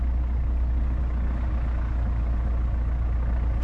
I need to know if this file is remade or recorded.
recorded